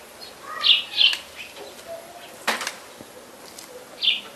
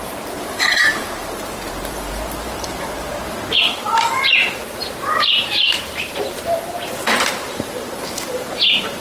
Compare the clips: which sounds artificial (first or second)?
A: second